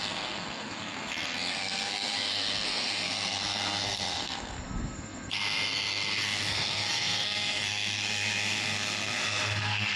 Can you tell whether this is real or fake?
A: fake